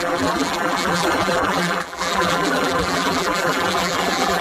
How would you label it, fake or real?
fake